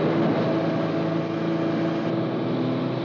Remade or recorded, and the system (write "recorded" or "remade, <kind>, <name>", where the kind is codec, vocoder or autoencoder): recorded